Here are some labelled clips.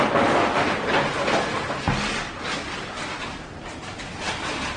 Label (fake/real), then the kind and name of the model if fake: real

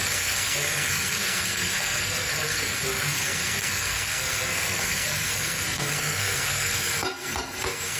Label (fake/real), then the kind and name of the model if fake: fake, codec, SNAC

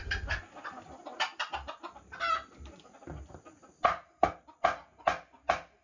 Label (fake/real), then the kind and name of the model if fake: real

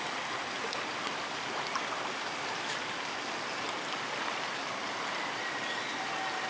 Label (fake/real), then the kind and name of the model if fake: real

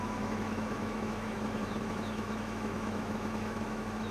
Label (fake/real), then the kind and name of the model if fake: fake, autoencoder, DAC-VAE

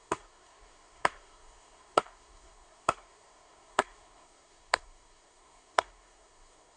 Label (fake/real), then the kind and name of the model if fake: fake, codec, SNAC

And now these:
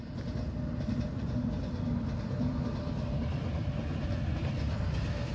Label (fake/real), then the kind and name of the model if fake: real